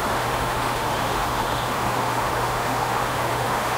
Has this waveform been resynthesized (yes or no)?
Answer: yes